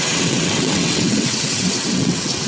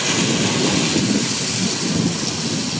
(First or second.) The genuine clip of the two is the second